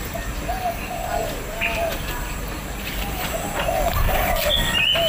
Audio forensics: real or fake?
real